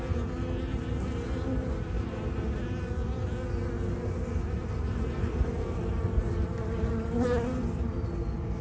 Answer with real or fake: real